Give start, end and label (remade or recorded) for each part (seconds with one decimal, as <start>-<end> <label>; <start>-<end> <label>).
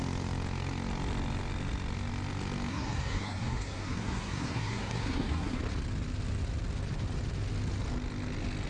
0.0-2.7 recorded; 2.7-5.6 remade; 5.6-8.7 recorded